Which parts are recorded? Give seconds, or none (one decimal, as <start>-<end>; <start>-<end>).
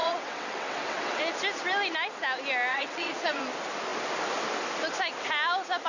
1.2-2.7; 3.4-5.9